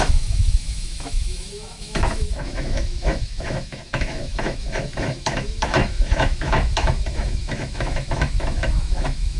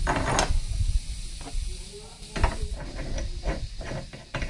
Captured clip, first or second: second